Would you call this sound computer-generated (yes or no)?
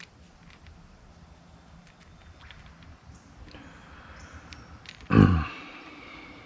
no